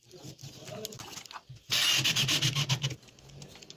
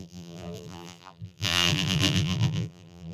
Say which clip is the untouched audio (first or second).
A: first